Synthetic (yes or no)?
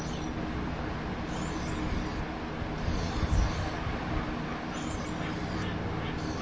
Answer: no